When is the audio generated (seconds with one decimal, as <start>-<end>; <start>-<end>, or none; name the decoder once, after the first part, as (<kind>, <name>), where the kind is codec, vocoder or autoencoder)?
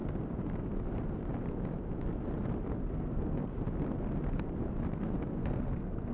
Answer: 2.9-3.5 (codec, SNAC); 5.4-6.1